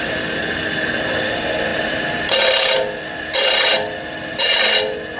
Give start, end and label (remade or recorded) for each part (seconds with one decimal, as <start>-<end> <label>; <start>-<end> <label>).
0.0-5.2 recorded